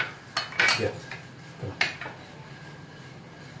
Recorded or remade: recorded